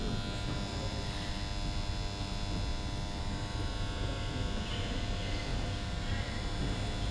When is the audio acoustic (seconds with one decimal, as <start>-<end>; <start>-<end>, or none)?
0.0-0.7; 1.3-2.7; 3.7-5.5; 6.6-7.1